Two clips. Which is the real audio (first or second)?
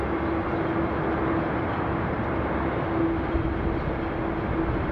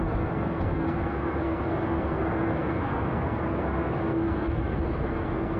first